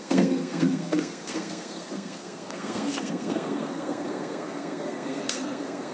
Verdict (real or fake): fake